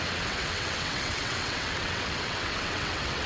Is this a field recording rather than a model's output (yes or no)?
no